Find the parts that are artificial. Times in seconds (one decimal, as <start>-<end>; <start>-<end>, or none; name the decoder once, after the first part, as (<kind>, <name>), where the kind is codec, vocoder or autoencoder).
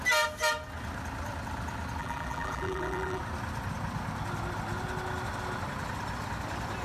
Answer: 2.0-3.2 (vocoder, BigVGAN v2)